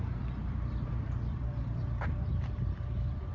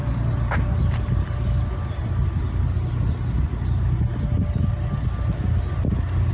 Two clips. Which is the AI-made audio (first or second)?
first